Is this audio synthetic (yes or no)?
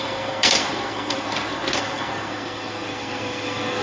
yes